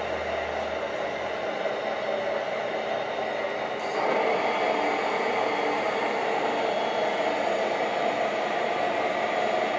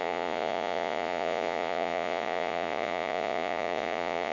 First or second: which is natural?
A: first